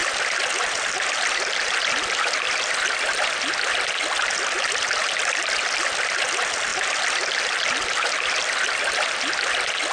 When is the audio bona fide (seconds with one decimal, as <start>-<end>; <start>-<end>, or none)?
3.4-9.9